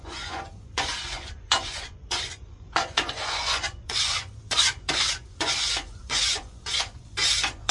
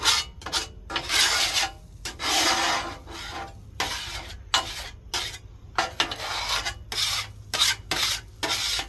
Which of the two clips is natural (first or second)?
second